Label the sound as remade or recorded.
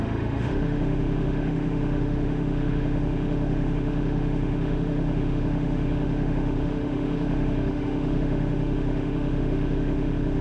remade